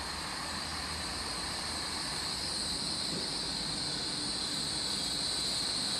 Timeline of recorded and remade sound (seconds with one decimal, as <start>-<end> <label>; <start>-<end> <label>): 0.0-6.0 recorded

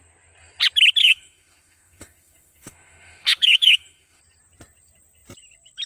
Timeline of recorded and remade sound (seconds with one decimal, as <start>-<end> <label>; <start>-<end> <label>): 0.0-1.0 recorded; 1.0-4.2 remade; 4.2-5.9 recorded

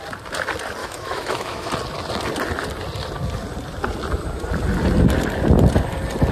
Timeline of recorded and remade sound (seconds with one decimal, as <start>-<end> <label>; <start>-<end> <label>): 0.0-0.8 recorded; 0.8-1.7 remade; 1.7-6.3 recorded

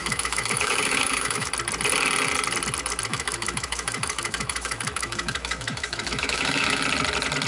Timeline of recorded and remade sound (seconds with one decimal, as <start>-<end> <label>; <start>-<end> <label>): 0.0-1.5 remade; 1.5-3.1 recorded; 3.1-6.8 remade; 6.8-7.5 recorded

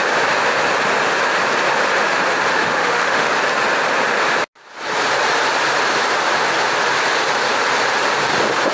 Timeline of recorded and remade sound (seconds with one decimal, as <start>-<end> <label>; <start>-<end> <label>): 0.0-2.5 recorded; 2.5-3.3 remade; 3.3-8.7 recorded

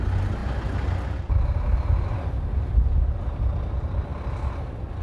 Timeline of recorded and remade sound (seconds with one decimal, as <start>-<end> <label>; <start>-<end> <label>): 0.0-5.0 recorded

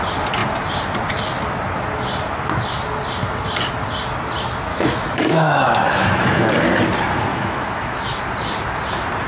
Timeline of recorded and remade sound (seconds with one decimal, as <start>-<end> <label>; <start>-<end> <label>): 0.0-4.7 recorded; 4.7-6.5 remade; 6.5-7.3 recorded; 7.3-8.2 remade; 8.2-9.3 recorded

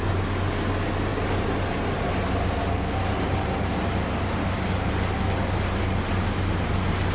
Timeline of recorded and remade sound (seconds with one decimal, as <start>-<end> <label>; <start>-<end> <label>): 0.0-7.1 recorded